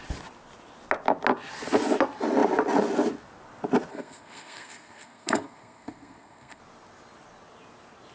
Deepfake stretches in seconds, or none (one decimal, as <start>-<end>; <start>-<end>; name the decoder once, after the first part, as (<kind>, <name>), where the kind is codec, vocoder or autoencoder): 3.9-6.6 (codec, SNAC)